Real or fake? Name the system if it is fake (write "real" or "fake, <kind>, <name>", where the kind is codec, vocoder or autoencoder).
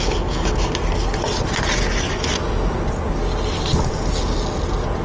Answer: real